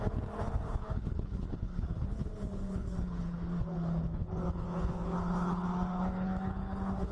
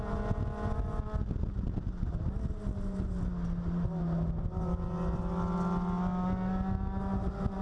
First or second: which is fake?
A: first